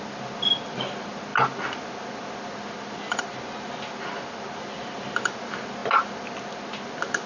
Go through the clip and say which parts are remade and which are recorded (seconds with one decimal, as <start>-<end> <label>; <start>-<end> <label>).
0.0-7.3 recorded